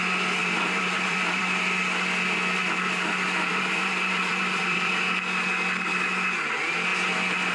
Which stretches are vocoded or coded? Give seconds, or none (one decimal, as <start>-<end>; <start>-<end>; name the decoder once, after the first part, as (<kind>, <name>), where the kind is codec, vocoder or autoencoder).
0.4-1.4 (vocoder, BigVGAN v2); 3.5-4.9